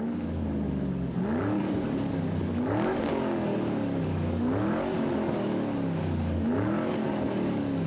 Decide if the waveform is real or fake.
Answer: fake